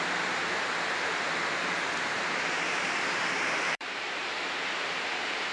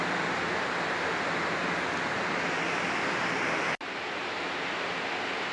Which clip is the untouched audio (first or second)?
second